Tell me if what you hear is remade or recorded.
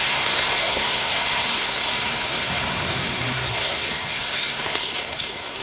remade